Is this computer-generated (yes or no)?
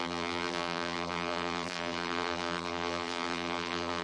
yes